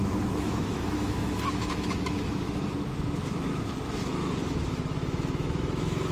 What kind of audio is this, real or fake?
fake